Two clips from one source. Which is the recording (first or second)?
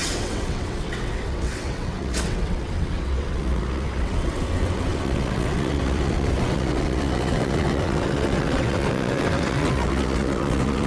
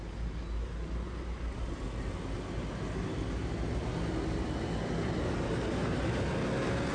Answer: second